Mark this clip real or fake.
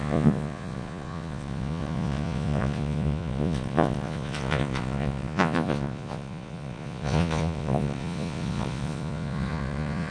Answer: fake